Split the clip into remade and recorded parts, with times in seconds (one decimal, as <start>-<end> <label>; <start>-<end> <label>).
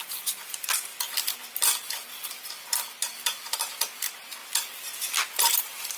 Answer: 0.0-4.4 remade; 4.4-5.6 recorded; 5.6-6.0 remade